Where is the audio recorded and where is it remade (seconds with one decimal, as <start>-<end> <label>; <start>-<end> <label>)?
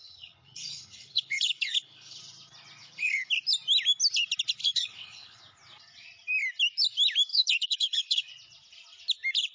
0.0-2.2 remade; 2.2-2.8 recorded; 2.8-3.3 remade; 3.3-4.6 recorded; 4.6-5.4 remade; 5.4-7.3 recorded; 7.3-8.3 remade; 8.3-9.5 recorded